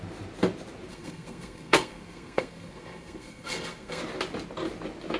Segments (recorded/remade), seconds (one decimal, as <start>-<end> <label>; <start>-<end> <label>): 0.0-0.9 recorded; 0.9-4.0 remade; 4.0-5.2 recorded

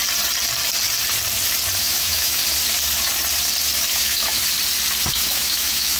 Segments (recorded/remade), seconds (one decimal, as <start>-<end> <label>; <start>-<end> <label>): 0.0-1.8 recorded; 1.8-2.4 remade; 2.4-3.9 recorded; 3.9-4.4 remade; 4.4-5.1 recorded; 5.1-6.0 remade

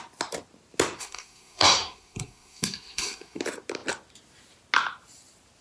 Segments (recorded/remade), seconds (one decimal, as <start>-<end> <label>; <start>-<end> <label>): 0.0-1.0 recorded; 1.0-3.4 remade; 3.4-5.6 recorded

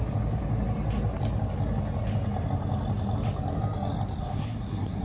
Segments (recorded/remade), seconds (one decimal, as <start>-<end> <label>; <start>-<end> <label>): 0.0-4.2 recorded; 4.2-5.0 remade